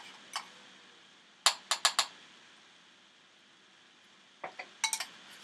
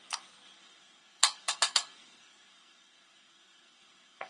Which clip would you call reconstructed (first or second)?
second